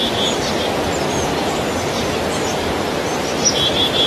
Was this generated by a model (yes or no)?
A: no